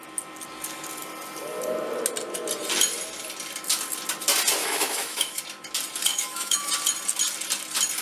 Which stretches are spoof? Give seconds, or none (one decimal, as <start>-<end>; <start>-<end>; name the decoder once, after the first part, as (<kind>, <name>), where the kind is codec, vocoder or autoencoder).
4.6-5.4 (autoencoder, DAC-VAE); 6.1-6.7